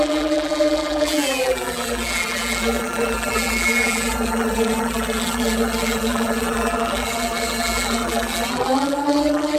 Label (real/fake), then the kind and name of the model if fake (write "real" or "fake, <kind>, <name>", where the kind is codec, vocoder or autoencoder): fake, vocoder, BigVGAN v2